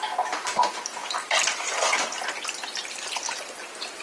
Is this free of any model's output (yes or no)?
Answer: yes